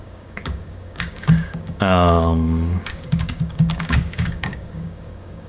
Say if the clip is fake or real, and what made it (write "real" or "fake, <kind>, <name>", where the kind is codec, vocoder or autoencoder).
fake, codec, DAC